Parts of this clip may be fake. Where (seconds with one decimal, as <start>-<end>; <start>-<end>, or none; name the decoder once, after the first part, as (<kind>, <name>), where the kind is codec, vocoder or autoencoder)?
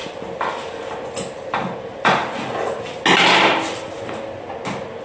none